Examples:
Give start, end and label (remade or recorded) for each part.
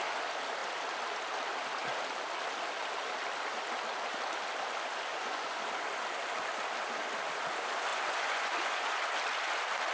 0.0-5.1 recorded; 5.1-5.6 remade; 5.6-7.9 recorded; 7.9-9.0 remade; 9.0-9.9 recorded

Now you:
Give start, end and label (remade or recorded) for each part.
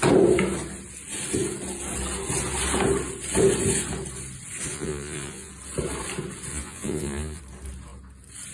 0.0-4.7 recorded; 4.7-5.5 remade; 5.5-6.5 recorded; 6.5-7.4 remade; 7.4-8.5 recorded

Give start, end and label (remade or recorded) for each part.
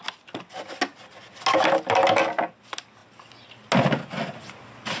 0.0-5.0 recorded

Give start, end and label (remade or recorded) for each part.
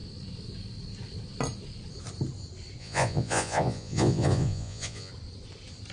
0.0-2.8 recorded; 2.8-5.1 remade; 5.1-5.9 recorded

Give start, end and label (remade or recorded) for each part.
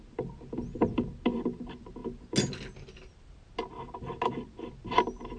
0.0-5.4 recorded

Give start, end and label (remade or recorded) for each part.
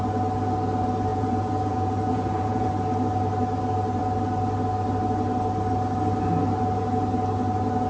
0.0-1.1 recorded; 1.1-2.7 remade; 2.7-7.9 recorded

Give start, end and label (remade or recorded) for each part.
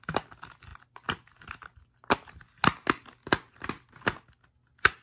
0.0-5.0 recorded